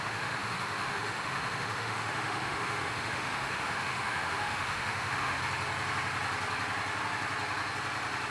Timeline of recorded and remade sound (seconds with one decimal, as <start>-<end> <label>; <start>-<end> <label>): 0.0-5.4 remade; 5.4-8.3 recorded